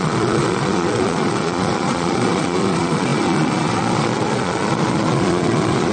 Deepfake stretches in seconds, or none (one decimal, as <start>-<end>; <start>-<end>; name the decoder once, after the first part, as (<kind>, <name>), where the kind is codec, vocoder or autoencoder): 0.0-5.9 (vocoder, Vocos)